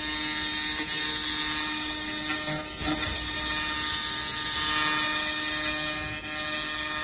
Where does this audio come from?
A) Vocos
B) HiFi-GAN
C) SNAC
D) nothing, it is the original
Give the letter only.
D